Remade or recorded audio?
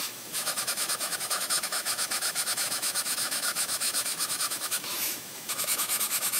remade